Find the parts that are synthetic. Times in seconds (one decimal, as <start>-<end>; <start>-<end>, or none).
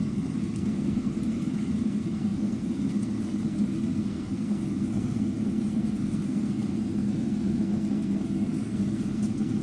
0.0-9.6